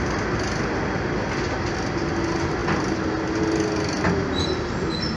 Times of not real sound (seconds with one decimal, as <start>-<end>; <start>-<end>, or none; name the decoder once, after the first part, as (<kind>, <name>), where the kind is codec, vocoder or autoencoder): none